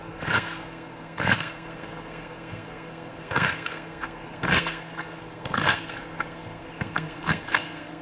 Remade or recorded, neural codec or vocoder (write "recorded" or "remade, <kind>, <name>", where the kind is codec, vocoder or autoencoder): remade, codec, SNAC